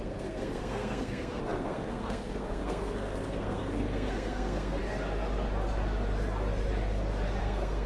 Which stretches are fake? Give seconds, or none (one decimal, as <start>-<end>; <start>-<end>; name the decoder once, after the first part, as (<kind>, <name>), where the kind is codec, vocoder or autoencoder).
0.0-4.8 (codec, SNAC); 7.4-7.9